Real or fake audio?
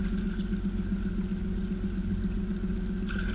real